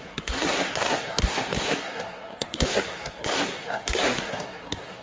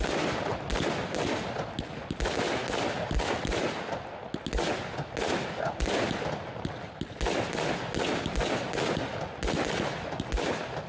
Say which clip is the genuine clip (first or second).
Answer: second